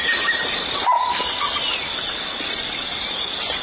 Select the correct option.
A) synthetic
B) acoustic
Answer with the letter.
B